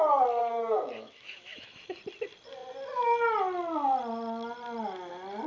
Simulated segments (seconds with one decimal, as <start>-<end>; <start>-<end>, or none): 0.4-2.0